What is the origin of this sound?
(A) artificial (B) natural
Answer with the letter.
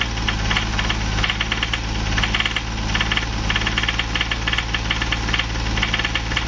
B